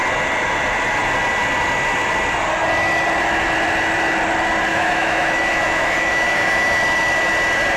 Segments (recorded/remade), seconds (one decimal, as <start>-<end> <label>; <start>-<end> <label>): 0.0-4.7 recorded; 4.7-6.8 remade; 6.8-7.8 recorded